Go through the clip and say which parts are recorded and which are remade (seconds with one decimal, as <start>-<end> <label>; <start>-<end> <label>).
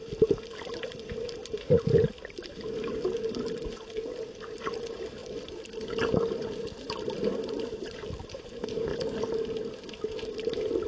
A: 0.0-1.4 remade; 1.4-4.2 recorded; 4.2-5.2 remade; 5.2-7.6 recorded; 7.6-8.9 remade; 8.9-9.9 recorded; 9.9-10.9 remade